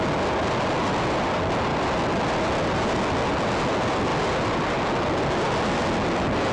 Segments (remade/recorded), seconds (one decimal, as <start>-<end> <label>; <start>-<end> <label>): 0.0-6.5 recorded